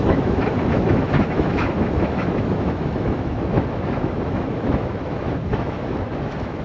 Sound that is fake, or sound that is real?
fake